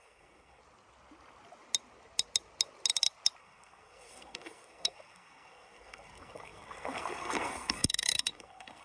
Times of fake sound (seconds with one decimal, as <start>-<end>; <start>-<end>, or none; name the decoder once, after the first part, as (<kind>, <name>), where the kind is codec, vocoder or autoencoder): 0.0-0.6 (codec, SNAC); 3.4-8.8